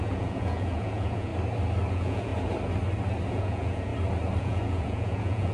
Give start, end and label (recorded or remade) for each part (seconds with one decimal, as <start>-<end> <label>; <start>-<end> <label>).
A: 0.0-1.3 remade; 1.3-1.9 recorded; 1.9-2.3 remade; 2.3-3.3 recorded; 3.3-3.9 remade; 3.9-4.4 recorded; 4.4-5.5 remade